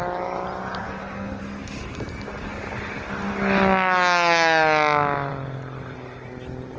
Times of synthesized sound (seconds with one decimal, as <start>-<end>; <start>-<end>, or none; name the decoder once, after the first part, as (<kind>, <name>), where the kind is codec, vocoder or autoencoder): 0.8-1.4 (codec, SNAC)